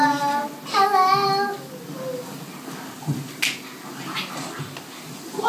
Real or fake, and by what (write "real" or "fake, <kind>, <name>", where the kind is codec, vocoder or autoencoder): real